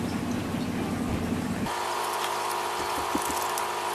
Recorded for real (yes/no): yes